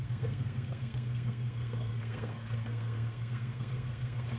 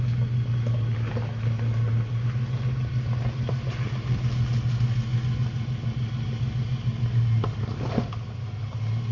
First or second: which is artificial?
first